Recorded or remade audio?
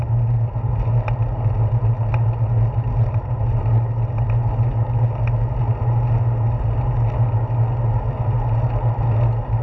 recorded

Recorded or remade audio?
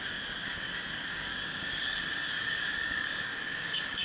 remade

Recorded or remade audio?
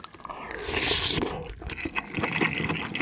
recorded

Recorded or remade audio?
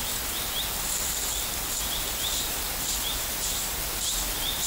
recorded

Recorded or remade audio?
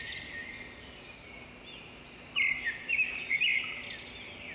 recorded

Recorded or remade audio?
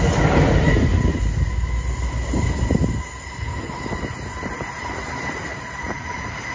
recorded